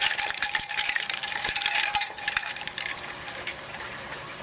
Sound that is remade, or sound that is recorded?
remade